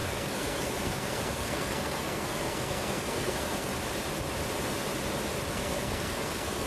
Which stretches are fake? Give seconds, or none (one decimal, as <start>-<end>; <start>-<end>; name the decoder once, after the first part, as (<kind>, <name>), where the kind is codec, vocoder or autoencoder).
0.0-3.7 (codec, SNAC); 5.5-6.7